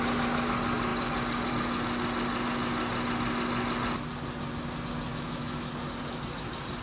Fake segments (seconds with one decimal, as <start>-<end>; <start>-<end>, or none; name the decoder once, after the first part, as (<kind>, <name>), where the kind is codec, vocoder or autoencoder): 5.1-5.7 (autoencoder, DAC-VAE)

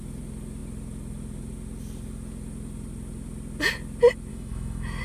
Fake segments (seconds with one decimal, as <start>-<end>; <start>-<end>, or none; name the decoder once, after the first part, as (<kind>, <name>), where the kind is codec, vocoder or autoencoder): 4.3-5.0 (autoencoder, DAC-VAE)

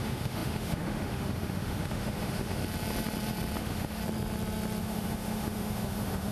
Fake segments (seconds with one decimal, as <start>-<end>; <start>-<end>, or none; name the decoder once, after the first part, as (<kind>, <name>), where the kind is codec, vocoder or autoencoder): 0.0-2.6 (autoencoder, DAC-VAE); 3.6-4.0; 4.8-6.3

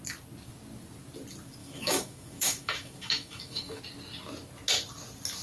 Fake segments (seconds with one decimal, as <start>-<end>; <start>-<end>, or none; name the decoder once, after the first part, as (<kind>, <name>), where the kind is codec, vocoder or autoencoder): 1.6-3.8 (autoencoder, DAC-VAE)